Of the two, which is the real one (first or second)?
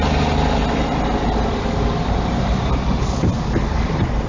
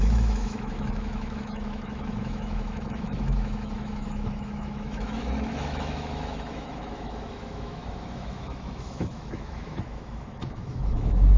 first